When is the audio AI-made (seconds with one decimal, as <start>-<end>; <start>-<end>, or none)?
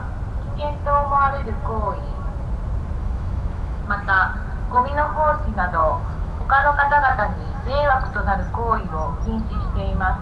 3.0-3.8; 5.8-7.9